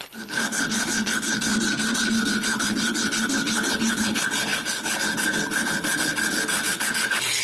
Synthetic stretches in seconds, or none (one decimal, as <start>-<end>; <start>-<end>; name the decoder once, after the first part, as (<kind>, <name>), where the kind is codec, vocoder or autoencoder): 0.0-1.5 (codec, HILCodec); 2.1-7.4